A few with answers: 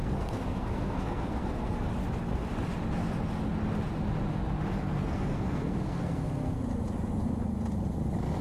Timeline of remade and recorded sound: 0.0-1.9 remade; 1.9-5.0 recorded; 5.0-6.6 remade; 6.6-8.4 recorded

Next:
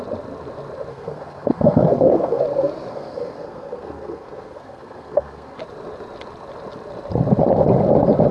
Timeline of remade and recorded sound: 0.0-0.9 recorded; 0.9-2.4 remade; 2.4-2.9 recorded; 2.9-5.6 remade; 5.6-8.3 recorded

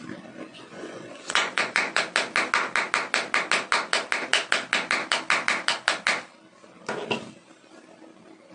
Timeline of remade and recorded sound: 0.0-0.5 recorded; 0.5-2.0 remade; 2.0-8.5 recorded

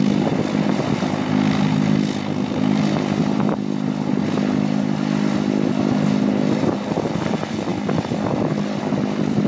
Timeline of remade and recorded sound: 0.0-9.5 recorded

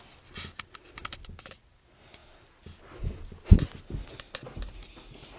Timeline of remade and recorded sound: 0.0-5.4 recorded

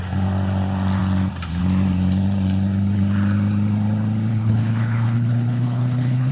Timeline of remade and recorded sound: 0.0-4.3 recorded; 4.3-6.3 remade

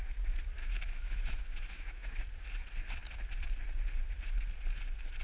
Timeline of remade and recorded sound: 0.0-0.6 recorded; 0.6-2.2 remade; 2.2-5.2 recorded